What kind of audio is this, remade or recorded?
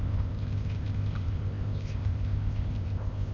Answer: remade